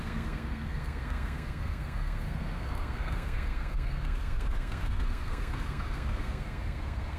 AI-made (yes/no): yes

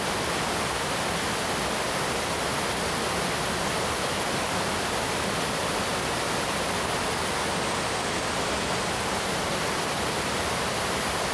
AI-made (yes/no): no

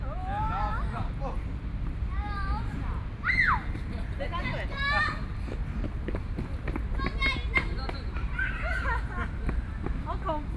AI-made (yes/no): no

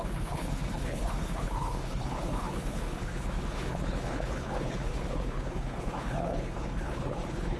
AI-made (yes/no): yes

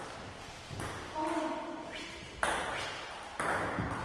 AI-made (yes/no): no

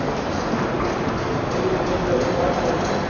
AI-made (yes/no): no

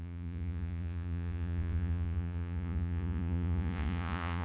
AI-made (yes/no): yes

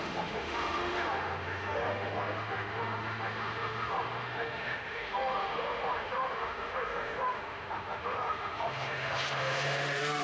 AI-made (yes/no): yes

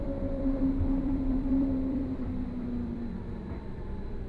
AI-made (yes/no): yes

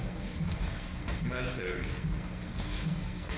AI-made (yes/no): yes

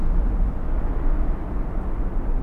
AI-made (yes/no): no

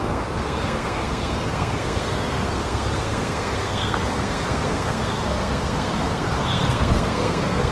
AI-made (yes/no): yes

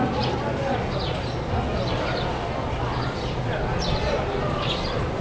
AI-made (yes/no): no